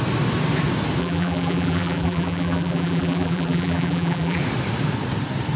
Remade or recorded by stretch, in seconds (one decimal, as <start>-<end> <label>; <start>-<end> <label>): 0.0-1.0 recorded; 1.0-4.4 remade; 4.4-5.6 recorded